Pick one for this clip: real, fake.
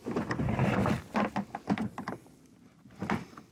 real